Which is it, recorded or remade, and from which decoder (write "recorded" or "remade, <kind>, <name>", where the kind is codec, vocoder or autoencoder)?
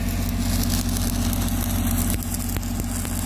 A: recorded